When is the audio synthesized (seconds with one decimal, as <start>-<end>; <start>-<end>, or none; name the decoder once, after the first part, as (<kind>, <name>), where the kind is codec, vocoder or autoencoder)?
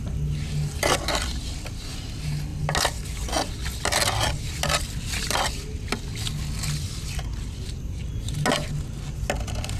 none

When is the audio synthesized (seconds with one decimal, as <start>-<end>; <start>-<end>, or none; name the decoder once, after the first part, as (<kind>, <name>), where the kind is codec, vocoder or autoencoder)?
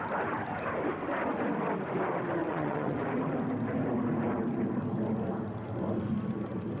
2.4-3.0 (vocoder, WaveNeXt)